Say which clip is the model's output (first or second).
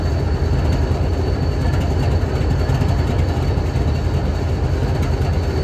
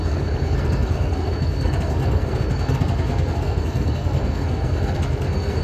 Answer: second